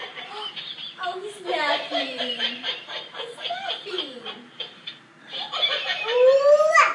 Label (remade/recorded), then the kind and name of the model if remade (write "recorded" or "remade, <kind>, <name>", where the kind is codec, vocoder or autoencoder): remade, vocoder, BigVGAN v2